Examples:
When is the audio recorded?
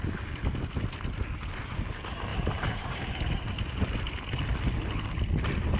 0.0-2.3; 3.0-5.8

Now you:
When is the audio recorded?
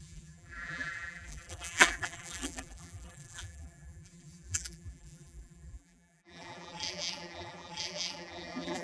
none